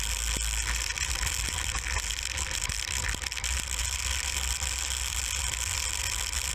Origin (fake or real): real